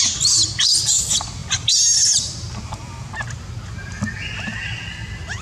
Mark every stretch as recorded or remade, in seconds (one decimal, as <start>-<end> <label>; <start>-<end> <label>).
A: 0.0-5.4 recorded